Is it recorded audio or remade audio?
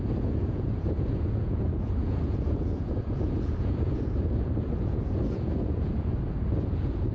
remade